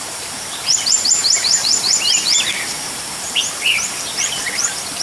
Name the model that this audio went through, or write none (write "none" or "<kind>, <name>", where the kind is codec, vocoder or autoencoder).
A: vocoder, BigVGAN v2